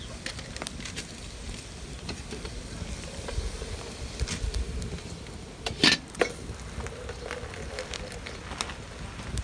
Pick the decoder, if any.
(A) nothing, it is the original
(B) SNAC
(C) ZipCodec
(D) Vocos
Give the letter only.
A